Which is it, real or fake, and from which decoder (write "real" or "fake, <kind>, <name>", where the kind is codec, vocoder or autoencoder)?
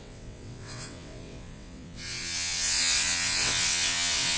fake, vocoder, WaveNeXt